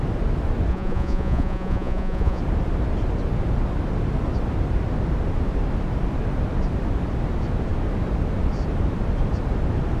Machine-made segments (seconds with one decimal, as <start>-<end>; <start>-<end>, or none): 0.7-2.4